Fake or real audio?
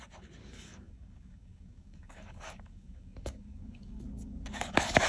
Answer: fake